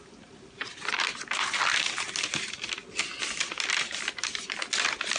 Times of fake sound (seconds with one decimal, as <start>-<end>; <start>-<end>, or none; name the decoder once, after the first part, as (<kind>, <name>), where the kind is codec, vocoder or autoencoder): none